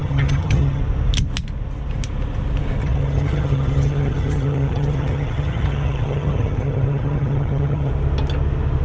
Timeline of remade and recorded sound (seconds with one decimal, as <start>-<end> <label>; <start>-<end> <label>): 0.0-0.8 remade; 0.8-2.8 recorded; 2.8-7.9 remade; 7.9-8.8 recorded